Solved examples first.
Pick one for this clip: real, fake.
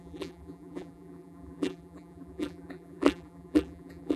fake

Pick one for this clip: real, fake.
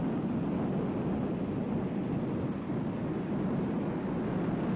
real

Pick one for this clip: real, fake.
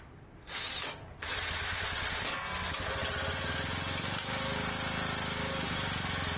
real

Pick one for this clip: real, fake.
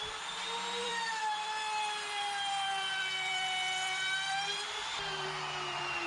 fake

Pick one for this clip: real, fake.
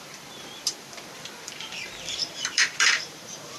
fake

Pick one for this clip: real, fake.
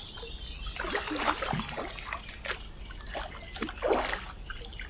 real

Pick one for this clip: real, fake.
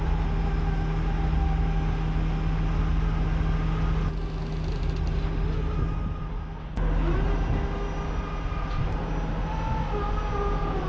real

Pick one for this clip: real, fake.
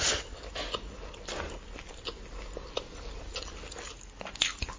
real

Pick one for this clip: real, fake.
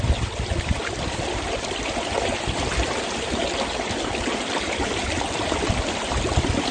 real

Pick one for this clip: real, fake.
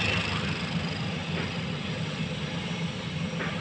real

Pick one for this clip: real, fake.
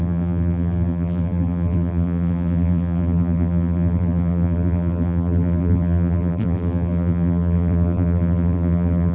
fake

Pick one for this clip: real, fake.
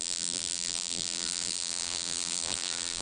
fake